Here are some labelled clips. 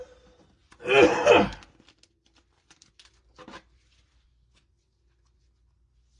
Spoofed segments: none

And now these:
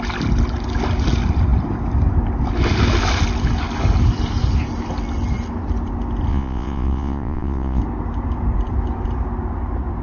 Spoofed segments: 6.3-7.8 (vocoder, Vocos)

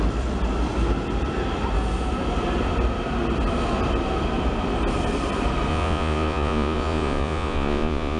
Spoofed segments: 5.7-8.2 (vocoder, Vocos)

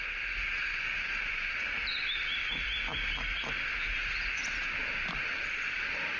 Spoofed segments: 0.7-1.5 (vocoder, Vocos)